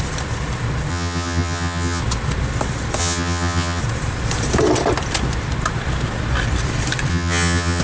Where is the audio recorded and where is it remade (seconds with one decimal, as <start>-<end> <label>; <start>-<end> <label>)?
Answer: 0.0-0.9 recorded; 0.9-2.0 remade; 2.0-3.0 recorded; 3.0-3.8 remade; 3.8-7.1 recorded; 7.1-7.8 remade